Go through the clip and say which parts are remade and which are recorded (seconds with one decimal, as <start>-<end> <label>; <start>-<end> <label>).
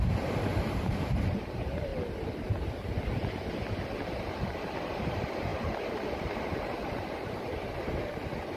0.0-1.9 remade; 1.9-4.3 recorded; 4.3-8.6 remade